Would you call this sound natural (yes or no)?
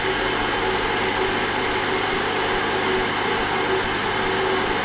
yes